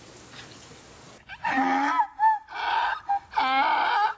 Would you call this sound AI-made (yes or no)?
no